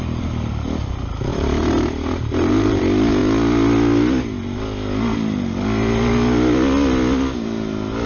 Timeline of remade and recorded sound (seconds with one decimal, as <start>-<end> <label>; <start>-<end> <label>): 0.0-1.3 recorded; 1.3-2.8 remade; 2.8-8.1 recorded